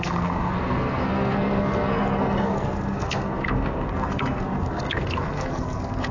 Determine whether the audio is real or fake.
fake